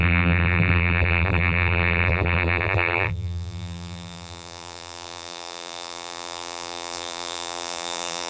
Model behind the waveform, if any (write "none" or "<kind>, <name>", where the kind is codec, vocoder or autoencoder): vocoder, BigVGAN v2